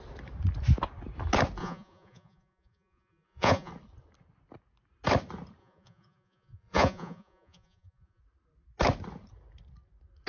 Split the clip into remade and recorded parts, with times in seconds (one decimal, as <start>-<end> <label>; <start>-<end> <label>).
0.0-1.6 recorded; 1.6-3.7 remade; 3.7-5.6 recorded; 5.6-8.2 remade; 8.2-10.3 recorded